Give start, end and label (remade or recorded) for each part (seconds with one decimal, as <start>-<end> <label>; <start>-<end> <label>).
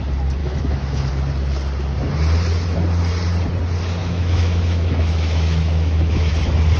0.0-0.4 recorded; 0.4-1.1 remade; 1.1-4.0 recorded; 4.0-6.3 remade; 6.3-6.8 recorded